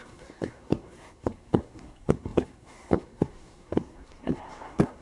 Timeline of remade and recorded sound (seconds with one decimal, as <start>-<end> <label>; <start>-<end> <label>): 0.0-5.0 remade